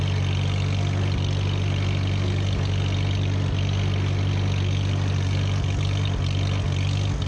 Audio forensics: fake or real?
real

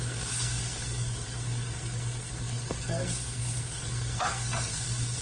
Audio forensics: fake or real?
fake